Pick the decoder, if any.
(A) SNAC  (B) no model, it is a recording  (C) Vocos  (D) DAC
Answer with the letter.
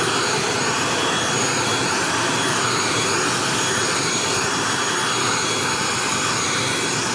B